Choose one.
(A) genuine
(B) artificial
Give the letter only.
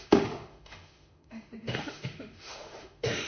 B